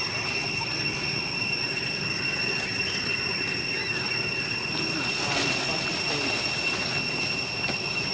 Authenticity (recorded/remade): recorded